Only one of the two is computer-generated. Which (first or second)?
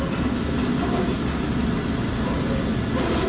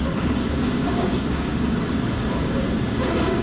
second